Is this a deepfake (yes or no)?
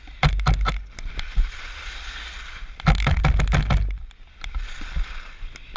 no